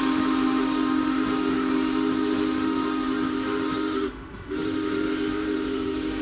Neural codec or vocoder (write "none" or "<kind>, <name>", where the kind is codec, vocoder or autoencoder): autoencoder, DAC-VAE